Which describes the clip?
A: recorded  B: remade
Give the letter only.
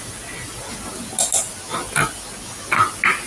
A